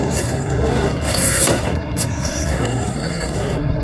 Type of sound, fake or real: fake